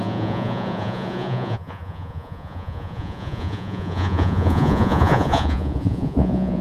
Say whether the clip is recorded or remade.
remade